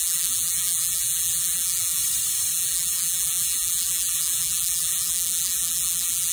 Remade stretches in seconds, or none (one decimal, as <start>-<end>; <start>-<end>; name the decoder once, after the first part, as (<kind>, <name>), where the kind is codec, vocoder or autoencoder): 0.0-2.0 (vocoder, BigVGAN v2); 2.5-6.3

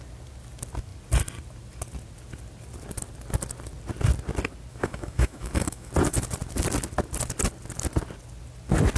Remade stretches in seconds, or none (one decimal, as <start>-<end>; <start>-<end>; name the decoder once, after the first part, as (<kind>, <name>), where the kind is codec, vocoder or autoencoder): 4.7-5.9 (autoencoder, DAC-VAE)

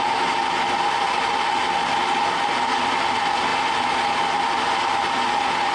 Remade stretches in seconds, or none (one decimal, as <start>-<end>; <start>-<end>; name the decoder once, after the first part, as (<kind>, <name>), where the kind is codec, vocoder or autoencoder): none

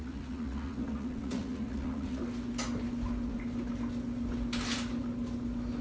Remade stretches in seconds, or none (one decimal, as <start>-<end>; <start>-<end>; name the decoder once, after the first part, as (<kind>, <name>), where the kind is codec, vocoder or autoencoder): 0.0-2.2 (vocoder, Vocos)

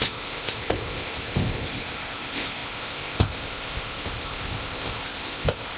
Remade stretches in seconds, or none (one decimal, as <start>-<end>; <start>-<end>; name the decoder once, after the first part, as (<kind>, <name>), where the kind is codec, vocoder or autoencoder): 0.0-5.8 (codec, ZipCodec)

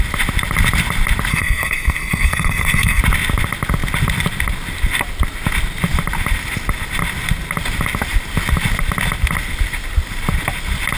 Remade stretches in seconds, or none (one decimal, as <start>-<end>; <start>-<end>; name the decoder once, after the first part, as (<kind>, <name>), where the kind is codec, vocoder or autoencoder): 1.3-3.0 (codec, SNAC)

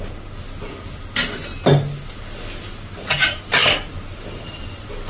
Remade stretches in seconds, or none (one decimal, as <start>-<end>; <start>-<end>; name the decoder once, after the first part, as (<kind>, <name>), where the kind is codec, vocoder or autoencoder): none

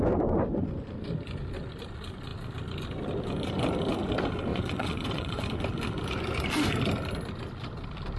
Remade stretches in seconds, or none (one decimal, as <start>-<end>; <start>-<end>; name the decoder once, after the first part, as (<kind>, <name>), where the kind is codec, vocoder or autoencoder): 4.5-5.4 (vocoder, Vocos)